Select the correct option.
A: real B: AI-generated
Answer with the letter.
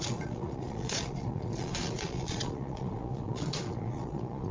B